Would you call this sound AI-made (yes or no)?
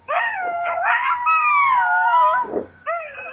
yes